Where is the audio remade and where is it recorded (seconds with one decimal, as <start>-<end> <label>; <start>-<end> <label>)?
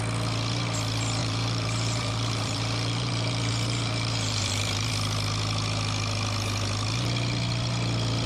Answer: 0.0-1.2 recorded; 1.2-4.9 remade; 4.9-8.3 recorded